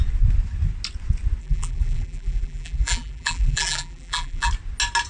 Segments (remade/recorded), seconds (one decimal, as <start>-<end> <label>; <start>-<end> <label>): 0.0-1.4 recorded; 1.4-4.5 remade; 4.5-5.1 recorded